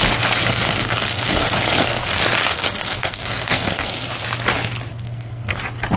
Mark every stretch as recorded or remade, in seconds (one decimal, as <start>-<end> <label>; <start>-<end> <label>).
0.0-0.4 recorded; 0.4-2.1 remade; 2.1-2.5 recorded; 2.5-4.1 remade; 4.1-4.9 recorded; 4.9-5.6 remade; 5.6-6.0 recorded